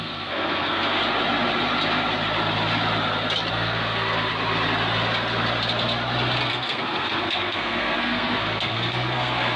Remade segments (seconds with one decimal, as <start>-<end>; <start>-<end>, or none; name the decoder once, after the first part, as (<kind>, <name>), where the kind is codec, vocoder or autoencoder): 0.0-1.0 (codec, SNAC); 3.5-4.3; 6.5-9.6